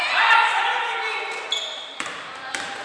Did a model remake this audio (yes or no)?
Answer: yes